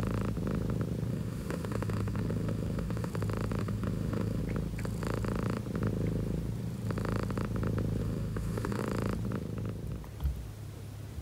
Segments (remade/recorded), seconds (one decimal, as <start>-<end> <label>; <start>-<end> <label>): 0.0-1.1 recorded; 1.1-3.1 remade; 3.1-3.6 recorded; 3.6-4.4 remade; 4.4-8.0 recorded; 8.0-8.8 remade; 8.8-11.2 recorded